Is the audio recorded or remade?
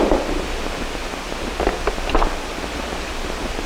recorded